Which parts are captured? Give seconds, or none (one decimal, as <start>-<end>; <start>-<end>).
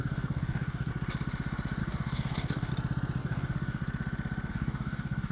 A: 0.9-1.8; 2.7-3.2; 3.8-4.5